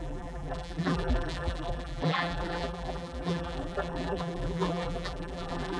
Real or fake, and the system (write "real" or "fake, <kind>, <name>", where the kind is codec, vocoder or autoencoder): fake, vocoder, BigVGAN v2